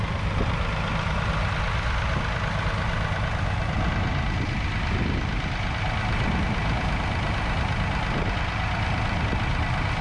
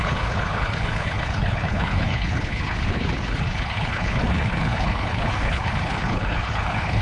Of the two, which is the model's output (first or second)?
second